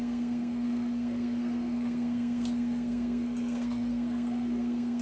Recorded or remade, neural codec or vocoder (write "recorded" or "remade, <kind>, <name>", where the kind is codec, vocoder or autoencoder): remade, codec, SNAC